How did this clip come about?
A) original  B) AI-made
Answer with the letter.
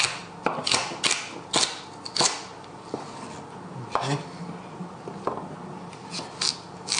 A